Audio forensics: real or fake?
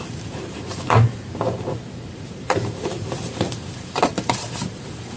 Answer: fake